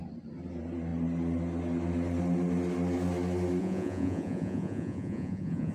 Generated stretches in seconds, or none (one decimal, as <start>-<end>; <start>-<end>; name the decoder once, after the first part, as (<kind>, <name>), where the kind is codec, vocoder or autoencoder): 3.6-5.7 (vocoder, Vocos)